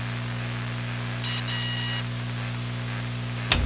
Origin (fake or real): real